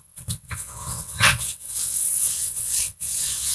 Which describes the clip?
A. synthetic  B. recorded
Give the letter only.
A